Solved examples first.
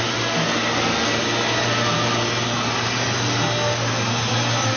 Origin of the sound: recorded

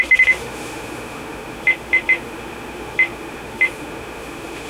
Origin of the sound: remade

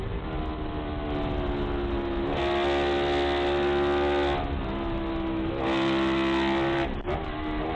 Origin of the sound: recorded